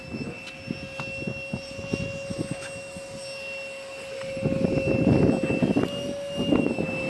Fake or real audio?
real